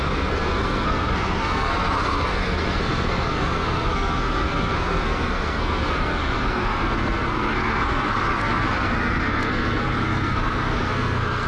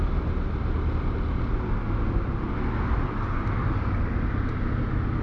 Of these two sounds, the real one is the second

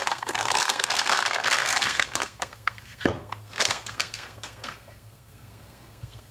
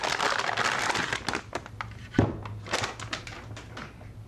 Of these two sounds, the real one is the second